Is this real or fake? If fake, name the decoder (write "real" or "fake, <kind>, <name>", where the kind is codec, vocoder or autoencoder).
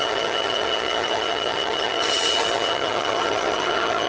fake, vocoder, HiFi-GAN